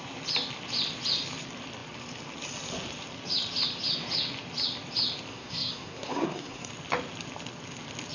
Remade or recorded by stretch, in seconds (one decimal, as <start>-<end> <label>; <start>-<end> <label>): 0.0-5.3 recorded; 5.3-6.7 remade; 6.7-8.1 recorded